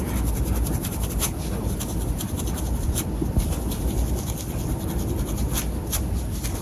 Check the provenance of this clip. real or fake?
real